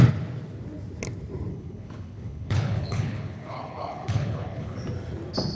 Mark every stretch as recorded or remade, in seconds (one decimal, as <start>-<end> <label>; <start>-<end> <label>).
0.0-1.5 recorded; 1.5-4.8 remade; 4.8-5.5 recorded